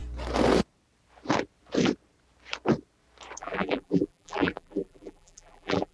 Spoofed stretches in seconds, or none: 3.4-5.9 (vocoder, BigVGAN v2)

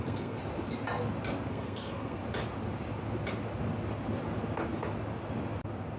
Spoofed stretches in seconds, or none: 0.0-0.4 (codec, SNAC); 1.5-2.2

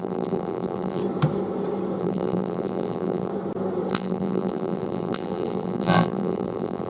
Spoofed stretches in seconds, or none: 0.0-1.0 (vocoder, BigVGAN v2); 2.0-3.3; 3.9-6.9

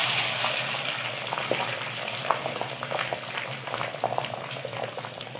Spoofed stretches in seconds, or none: none

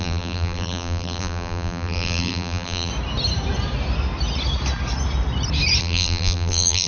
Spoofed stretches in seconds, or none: 0.0-2.9 (vocoder, BigVGAN v2); 5.8-6.9